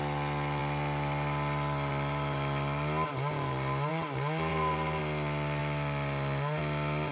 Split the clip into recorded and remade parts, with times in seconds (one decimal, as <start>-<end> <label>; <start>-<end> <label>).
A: 0.0-4.5 recorded; 4.5-5.0 remade; 5.0-7.1 recorded